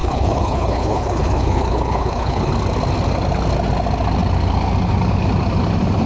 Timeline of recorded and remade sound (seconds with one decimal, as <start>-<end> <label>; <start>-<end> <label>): 0.0-2.5 remade; 2.5-6.1 recorded